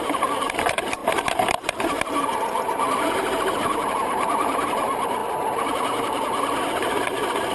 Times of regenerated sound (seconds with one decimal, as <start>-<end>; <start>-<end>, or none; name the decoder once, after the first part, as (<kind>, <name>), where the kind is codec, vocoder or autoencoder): 0.0-1.0 (vocoder, BigVGAN v2); 3.9-5.2; 6.7-7.5